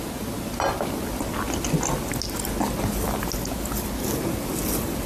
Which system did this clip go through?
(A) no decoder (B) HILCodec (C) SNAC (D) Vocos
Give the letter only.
A